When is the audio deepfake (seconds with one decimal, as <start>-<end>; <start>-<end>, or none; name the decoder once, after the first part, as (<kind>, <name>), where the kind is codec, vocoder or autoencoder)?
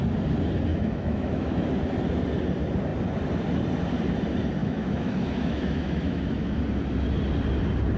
0.7-1.7 (autoencoder, DAC-VAE); 4.6-6.6